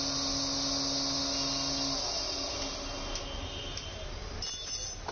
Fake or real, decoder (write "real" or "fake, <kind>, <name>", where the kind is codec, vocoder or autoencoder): real